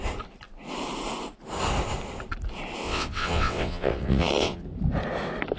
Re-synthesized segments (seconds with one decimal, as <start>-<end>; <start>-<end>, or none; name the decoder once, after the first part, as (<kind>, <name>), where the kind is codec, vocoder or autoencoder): 2.8-4.6 (vocoder, WaveNeXt)